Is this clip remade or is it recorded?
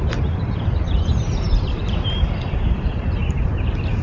remade